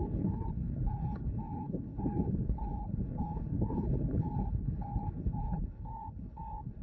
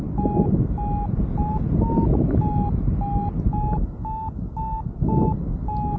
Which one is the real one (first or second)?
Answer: second